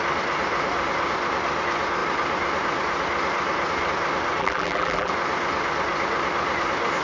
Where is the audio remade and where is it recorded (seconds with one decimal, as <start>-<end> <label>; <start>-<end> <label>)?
0.0-4.4 recorded; 4.4-5.1 remade; 5.1-7.0 recorded